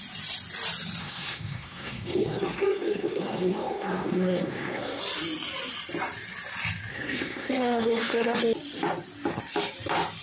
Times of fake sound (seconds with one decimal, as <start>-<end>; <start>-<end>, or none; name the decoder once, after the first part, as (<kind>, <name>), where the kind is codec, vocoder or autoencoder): 1.0-5.0 (codec, SNAC); 6.9-8.4